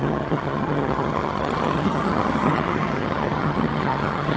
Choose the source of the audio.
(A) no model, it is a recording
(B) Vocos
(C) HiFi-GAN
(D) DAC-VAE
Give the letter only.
C